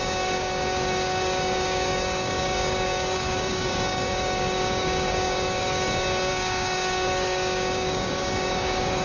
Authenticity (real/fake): fake